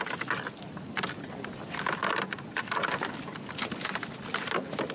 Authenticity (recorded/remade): recorded